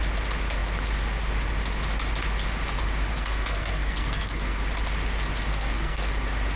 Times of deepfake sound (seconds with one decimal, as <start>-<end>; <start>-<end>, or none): 3.1-4.6; 5.5-6.0